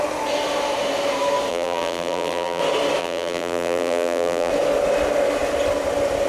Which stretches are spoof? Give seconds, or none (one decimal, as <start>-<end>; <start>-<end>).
1.5-2.6; 3.0-4.5